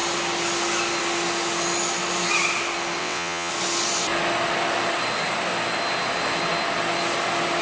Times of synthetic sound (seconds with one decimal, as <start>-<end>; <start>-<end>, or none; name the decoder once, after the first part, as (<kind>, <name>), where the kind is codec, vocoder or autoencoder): 3.0-3.5 (vocoder, WaveNeXt)